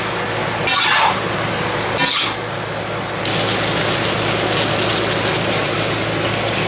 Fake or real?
real